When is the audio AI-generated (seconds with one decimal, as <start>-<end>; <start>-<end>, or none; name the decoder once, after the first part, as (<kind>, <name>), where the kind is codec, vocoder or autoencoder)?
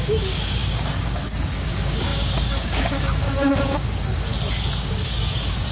0.0-4.3 (codec, DAC); 4.9-5.7